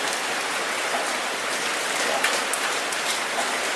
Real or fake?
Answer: real